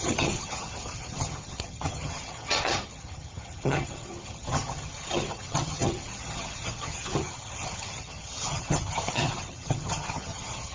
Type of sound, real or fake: fake